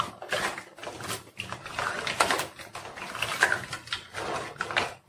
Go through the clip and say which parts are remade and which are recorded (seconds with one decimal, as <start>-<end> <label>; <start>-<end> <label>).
0.0-5.1 recorded